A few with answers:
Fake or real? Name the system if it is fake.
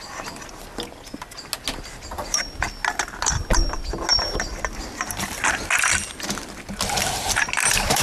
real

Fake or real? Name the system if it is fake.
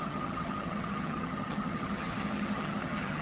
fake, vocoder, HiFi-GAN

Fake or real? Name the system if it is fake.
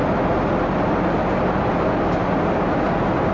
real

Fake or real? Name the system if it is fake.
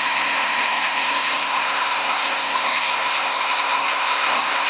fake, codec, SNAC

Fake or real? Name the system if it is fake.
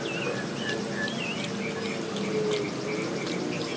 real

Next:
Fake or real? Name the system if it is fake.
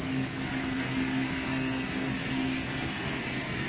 fake, codec, SNAC